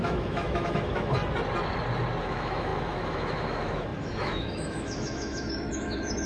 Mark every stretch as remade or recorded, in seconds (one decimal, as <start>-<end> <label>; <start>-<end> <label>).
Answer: 0.0-1.2 remade; 1.2-2.2 recorded; 2.2-6.3 remade